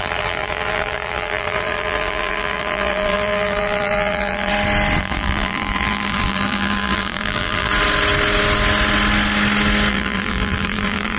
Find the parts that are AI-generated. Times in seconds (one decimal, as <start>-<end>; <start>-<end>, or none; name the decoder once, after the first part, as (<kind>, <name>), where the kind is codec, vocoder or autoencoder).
0.0-4.5 (vocoder, BigVGAN v2); 5.0-7.7; 9.9-11.2